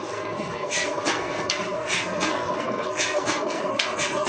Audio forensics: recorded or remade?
remade